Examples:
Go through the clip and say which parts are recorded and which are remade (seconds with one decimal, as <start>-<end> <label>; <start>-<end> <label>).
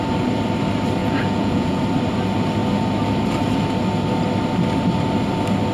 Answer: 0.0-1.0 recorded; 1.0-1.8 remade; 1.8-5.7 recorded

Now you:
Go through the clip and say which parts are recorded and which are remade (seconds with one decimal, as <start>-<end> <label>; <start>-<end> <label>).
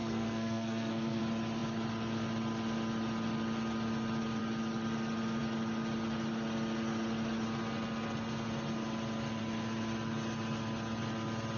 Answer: 0.0-1.2 remade; 1.2-11.6 recorded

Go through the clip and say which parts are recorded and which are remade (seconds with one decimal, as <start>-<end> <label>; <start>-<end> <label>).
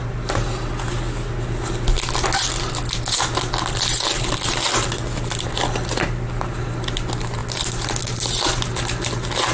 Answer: 0.0-9.5 recorded